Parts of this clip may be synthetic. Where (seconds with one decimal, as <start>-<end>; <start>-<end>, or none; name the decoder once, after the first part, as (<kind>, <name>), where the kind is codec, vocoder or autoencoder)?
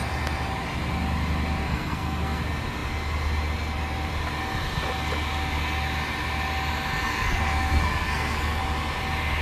1.6-2.4 (codec, SNAC); 7.1-8.6